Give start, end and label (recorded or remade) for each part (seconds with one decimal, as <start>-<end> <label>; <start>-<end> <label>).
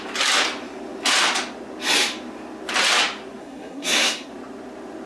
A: 0.0-3.4 recorded; 3.4-4.3 remade; 4.3-5.1 recorded